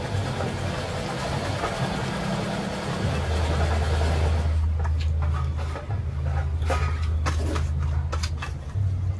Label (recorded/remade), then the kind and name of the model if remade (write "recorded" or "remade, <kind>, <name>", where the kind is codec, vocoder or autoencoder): recorded